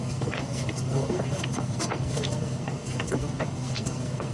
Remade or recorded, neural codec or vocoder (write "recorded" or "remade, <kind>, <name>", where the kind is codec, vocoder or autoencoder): remade, codec, SNAC